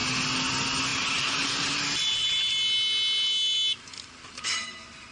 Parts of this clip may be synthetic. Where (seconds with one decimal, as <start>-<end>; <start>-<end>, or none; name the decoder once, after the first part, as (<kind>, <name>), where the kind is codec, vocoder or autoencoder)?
0.9-1.8 (vocoder, BigVGAN v2)